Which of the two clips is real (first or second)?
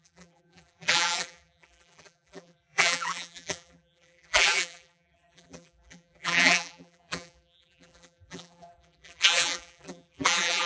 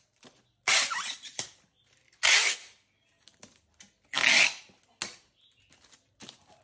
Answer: second